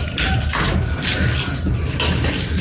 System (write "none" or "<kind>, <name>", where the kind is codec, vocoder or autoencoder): none